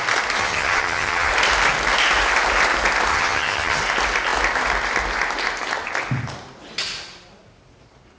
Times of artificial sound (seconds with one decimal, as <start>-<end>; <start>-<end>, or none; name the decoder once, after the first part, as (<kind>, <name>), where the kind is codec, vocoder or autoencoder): 0.4-1.3 (vocoder, HiFi-GAN); 3.1-3.8